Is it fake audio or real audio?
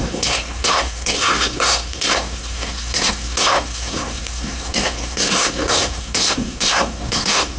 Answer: fake